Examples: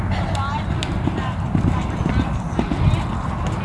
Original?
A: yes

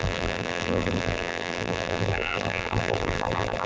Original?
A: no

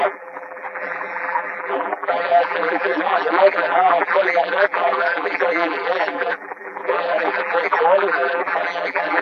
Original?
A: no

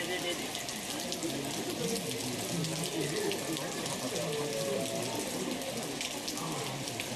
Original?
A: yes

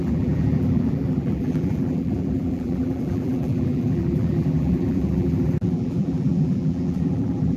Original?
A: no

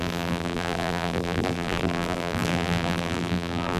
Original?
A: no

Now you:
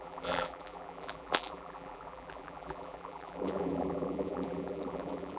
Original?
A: no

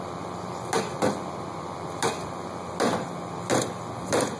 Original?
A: yes